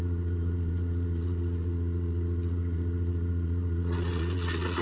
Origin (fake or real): fake